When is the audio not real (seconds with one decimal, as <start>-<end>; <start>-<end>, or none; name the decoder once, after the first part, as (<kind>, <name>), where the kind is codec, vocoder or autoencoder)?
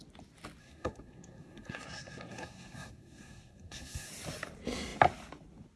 0.6-4.1 (codec, SNAC)